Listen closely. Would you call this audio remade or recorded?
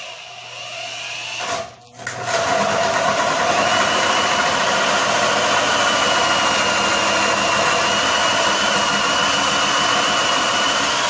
recorded